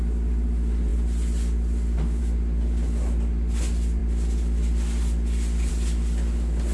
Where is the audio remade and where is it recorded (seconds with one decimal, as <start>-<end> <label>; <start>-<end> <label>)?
0.0-6.7 recorded